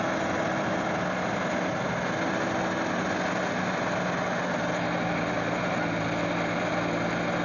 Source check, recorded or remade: recorded